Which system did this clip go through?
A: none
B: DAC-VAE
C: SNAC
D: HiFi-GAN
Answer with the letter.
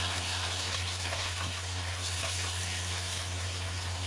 C